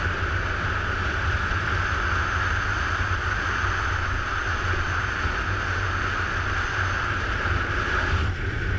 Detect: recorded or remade recorded